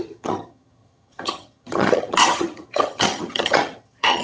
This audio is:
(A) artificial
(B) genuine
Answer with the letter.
A